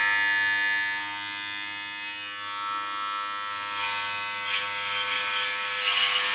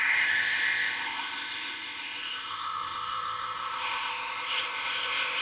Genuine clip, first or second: first